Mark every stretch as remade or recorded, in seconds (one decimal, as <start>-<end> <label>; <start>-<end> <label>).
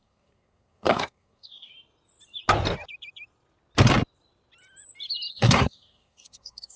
0.0-1.7 remade; 1.7-5.3 recorded; 5.3-6.8 remade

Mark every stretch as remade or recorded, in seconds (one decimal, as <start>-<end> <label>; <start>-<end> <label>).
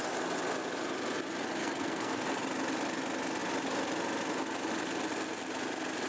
0.0-1.6 recorded; 1.6-2.4 remade; 2.4-6.1 recorded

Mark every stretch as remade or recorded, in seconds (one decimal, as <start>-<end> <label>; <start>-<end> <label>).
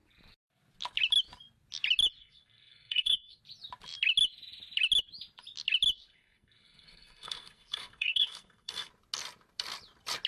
0.0-2.2 recorded; 2.2-3.4 remade; 3.4-6.1 recorded; 6.1-8.9 remade; 8.9-10.3 recorded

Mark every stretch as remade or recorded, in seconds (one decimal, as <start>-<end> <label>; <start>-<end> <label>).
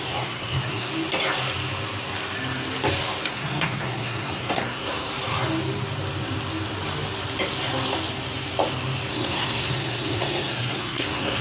0.0-0.9 remade; 0.9-3.3 recorded; 3.3-5.1 remade; 5.1-9.1 recorded; 9.1-11.4 remade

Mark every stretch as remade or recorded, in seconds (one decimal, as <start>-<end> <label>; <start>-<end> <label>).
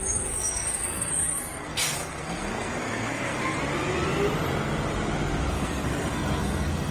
0.0-3.6 remade; 3.6-5.5 recorded; 5.5-6.9 remade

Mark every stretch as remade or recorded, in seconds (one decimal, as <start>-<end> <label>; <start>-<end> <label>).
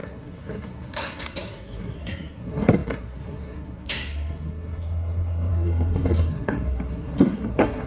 0.0-7.9 remade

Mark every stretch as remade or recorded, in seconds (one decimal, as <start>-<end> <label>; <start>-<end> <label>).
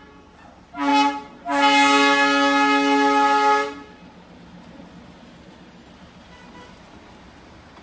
0.0-7.8 recorded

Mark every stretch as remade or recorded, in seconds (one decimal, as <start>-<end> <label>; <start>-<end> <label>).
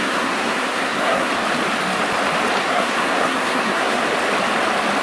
0.0-1.3 remade; 1.3-2.6 recorded; 2.6-4.0 remade; 4.0-5.0 recorded